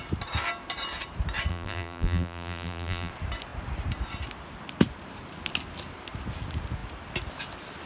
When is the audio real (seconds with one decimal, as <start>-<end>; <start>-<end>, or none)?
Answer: 0.0-1.5; 3.1-7.9